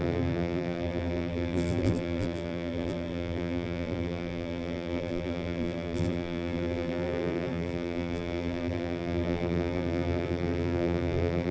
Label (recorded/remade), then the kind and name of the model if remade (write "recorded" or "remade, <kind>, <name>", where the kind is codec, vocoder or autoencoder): remade, vocoder, BigVGAN v2